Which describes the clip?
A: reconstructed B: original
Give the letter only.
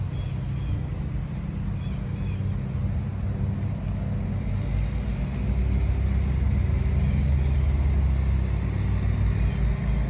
B